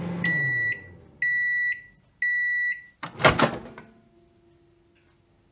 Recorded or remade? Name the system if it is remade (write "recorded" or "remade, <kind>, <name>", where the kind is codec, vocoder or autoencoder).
recorded